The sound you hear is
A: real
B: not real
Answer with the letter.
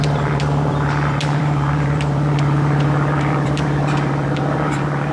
B